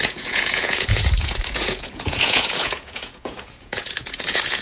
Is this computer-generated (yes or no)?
yes